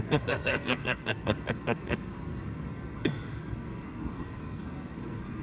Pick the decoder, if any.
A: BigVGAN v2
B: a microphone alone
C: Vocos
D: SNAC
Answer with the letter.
D